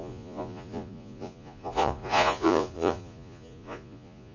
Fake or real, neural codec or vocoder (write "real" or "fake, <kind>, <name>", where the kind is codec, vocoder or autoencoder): fake, vocoder, Vocos